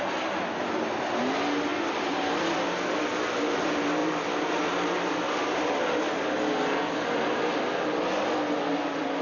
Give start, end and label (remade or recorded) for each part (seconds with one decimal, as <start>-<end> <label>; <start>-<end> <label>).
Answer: 0.0-1.7 recorded; 1.7-2.6 remade; 2.6-4.0 recorded; 4.0-7.4 remade; 7.4-9.2 recorded